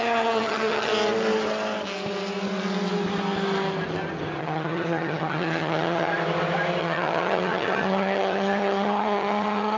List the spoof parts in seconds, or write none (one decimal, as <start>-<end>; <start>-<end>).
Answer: 0.0-0.9; 4.4-6.1; 6.8-9.8

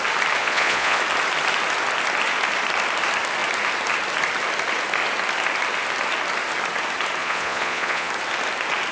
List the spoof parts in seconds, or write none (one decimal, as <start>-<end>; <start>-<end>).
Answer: 0.4-1.0; 7.2-8.1

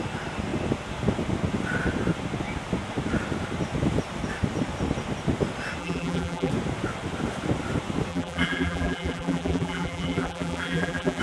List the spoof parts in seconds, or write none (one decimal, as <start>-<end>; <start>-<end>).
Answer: 5.8-6.5; 8.1-11.2

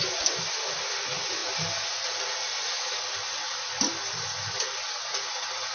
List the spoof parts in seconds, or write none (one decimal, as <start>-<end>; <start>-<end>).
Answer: none

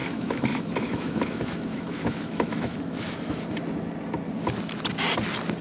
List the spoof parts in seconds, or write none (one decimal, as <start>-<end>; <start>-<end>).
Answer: 0.0-3.4

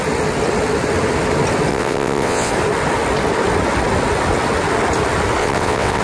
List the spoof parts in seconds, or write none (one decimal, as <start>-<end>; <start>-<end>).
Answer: 1.7-2.5; 5.4-6.0

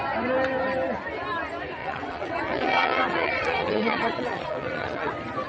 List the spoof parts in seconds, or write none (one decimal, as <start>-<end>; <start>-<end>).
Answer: 1.8-5.1